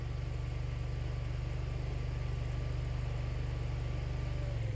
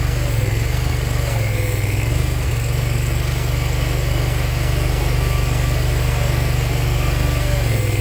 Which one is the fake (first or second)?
second